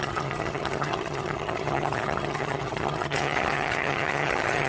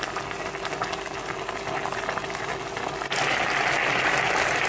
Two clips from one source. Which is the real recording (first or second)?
second